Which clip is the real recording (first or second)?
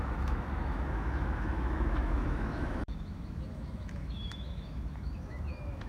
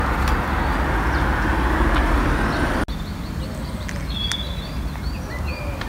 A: second